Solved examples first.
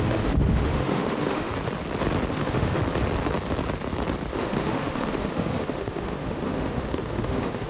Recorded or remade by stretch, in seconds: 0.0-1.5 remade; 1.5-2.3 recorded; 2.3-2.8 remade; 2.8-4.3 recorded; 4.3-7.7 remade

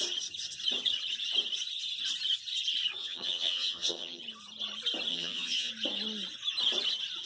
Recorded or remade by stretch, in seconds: 0.0-3.0 recorded; 3.0-4.2 remade; 4.2-5.1 recorded; 5.1-5.7 remade; 5.7-7.3 recorded